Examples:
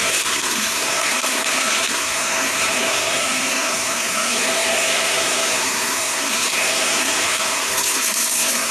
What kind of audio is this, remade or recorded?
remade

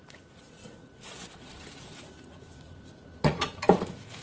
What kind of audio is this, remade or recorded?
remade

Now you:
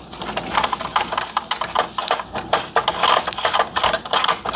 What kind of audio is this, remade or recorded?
recorded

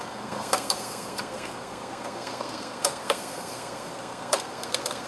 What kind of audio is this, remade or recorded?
remade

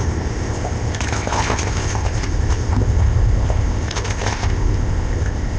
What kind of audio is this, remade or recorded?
remade